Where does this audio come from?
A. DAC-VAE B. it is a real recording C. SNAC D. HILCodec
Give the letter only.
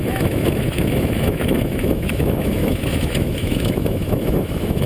A